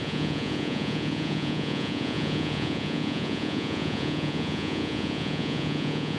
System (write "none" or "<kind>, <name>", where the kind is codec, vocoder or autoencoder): vocoder, Vocos